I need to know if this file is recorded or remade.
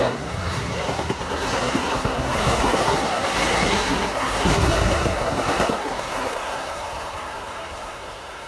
remade